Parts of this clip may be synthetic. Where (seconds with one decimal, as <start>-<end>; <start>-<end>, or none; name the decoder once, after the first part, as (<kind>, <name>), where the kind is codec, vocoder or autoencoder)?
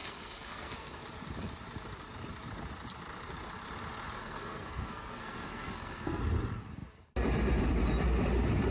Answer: 0.0-1.0 (codec, SNAC); 4.2-6.2